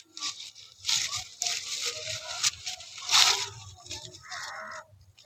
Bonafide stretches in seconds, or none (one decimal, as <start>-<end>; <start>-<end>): 1.2-4.3